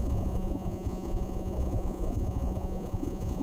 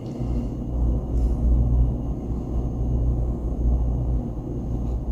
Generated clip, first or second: first